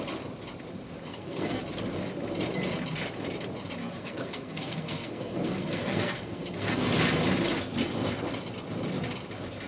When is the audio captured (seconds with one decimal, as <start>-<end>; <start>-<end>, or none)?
0.0-1.1; 1.6-3.8; 6.9-9.7